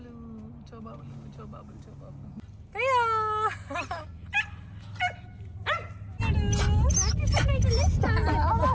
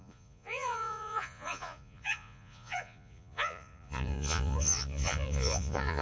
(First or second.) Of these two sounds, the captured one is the first